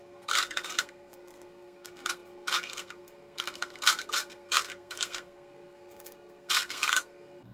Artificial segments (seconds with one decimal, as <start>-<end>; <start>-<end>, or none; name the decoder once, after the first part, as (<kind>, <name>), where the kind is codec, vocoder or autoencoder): 0.0-7.5 (codec, SNAC)